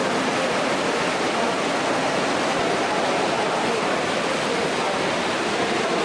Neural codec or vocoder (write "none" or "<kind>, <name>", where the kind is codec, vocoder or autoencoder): none